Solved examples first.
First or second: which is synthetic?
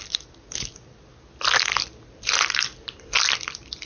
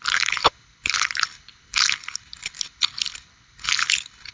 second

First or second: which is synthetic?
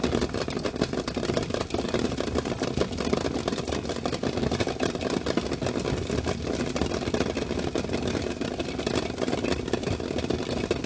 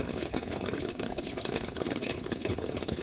second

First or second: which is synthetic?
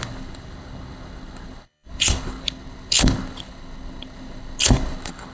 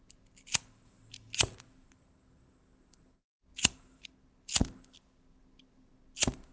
first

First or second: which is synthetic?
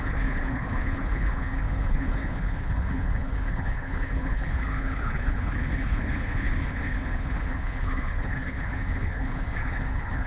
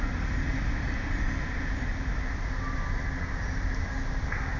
first